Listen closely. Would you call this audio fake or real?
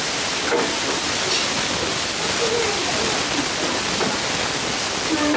real